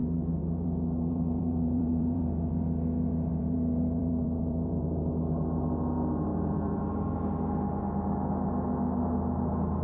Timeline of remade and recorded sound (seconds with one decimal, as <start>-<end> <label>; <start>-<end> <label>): 0.0-2.6 remade; 2.6-3.3 recorded; 3.3-5.1 remade; 5.1-6.3 recorded; 6.3-6.8 remade; 6.8-9.8 recorded